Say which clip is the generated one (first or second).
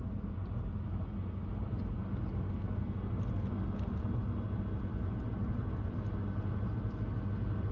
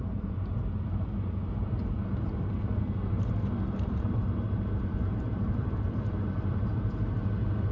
second